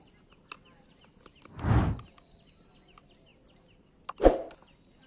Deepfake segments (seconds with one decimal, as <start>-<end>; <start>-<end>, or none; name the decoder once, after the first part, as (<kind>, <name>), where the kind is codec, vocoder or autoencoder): none